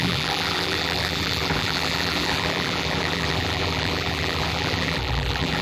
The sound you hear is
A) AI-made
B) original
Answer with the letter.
A